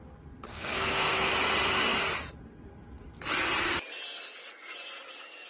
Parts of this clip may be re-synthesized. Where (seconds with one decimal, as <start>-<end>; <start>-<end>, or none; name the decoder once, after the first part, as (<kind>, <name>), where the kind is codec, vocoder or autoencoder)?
0.5-1.3 (codec, SNAC)